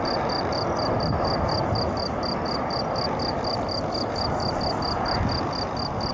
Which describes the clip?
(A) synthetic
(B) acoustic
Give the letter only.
A